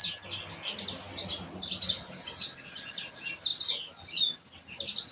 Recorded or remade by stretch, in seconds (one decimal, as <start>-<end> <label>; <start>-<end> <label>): 0.0-5.1 recorded